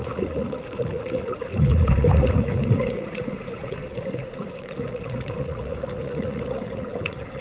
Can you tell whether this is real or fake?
fake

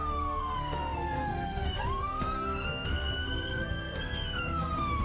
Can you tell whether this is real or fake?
fake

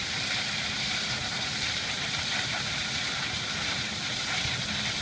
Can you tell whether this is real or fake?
real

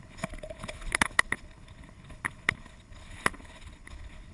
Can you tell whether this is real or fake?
fake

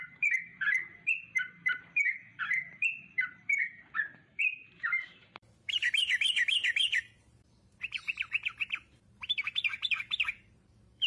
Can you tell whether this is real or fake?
fake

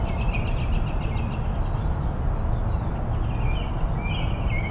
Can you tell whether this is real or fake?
real